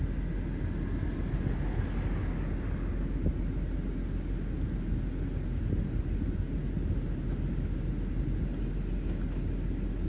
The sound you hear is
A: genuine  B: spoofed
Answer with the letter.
A